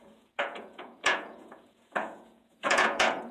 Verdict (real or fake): fake